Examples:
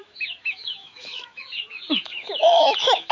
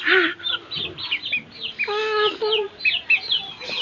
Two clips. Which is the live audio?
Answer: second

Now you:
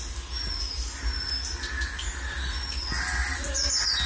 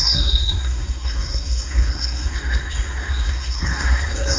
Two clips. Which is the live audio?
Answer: first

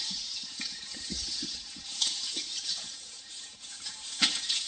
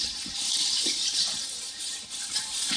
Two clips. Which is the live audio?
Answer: second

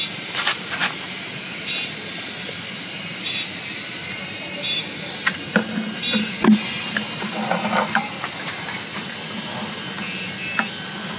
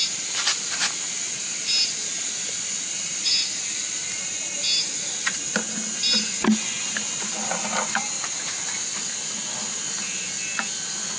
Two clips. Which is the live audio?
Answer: second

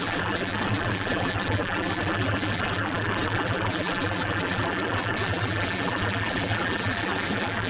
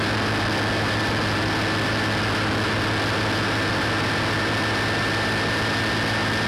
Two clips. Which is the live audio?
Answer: second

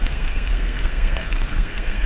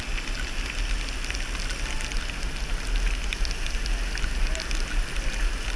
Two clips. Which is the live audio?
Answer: second